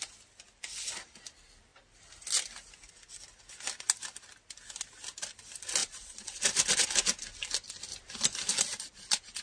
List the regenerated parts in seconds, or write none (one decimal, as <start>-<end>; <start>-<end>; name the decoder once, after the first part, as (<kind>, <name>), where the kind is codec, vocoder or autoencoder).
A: 5.8-6.4 (vocoder, Vocos)